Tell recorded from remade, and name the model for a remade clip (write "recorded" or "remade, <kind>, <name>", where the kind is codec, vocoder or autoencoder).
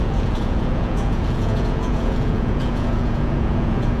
remade, vocoder, Vocos